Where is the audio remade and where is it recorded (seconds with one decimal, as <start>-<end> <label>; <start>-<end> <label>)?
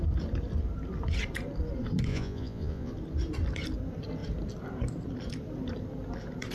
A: 0.0-2.1 recorded; 2.1-2.9 remade; 2.9-6.5 recorded